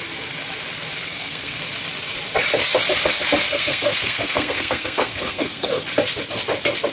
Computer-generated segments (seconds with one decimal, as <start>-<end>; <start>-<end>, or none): 1.0-1.6; 3.5-5.7